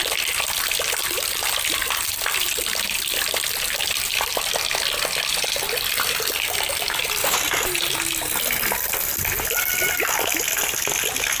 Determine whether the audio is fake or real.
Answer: real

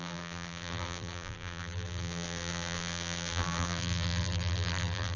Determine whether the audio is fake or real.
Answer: fake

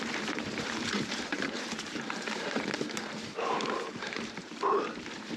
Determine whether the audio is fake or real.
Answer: fake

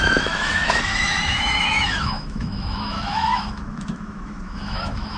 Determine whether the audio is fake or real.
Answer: fake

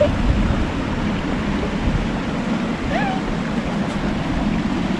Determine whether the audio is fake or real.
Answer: real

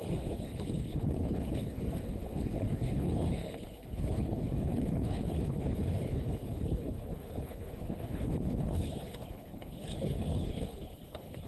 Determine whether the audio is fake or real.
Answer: fake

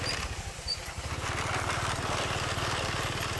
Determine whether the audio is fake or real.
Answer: real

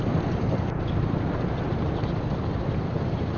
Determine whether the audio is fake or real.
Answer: real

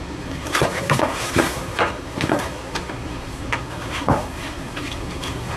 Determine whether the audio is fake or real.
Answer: fake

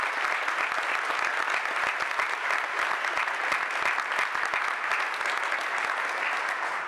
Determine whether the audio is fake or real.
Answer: real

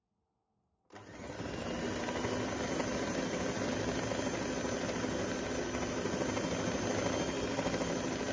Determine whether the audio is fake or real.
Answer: real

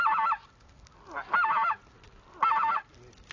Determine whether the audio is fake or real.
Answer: real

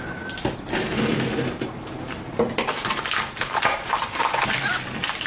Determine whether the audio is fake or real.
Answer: real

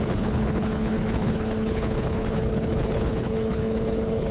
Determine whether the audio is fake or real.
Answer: fake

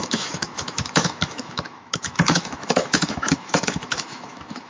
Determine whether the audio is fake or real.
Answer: fake